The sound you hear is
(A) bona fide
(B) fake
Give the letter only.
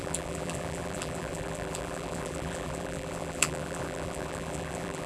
B